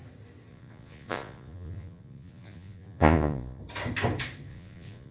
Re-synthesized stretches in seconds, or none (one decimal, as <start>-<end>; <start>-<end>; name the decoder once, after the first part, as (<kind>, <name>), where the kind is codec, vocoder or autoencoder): 0.5-3.6 (vocoder, Vocos); 4.5-5.1